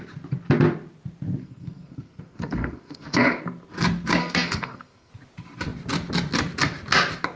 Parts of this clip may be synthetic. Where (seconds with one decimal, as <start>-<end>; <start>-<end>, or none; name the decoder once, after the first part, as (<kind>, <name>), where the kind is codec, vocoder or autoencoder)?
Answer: 1.4-3.4 (codec, SNAC); 4.2-5.1